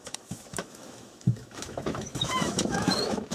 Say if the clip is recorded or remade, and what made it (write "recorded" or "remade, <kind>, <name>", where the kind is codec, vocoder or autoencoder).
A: remade, autoencoder, DAC-VAE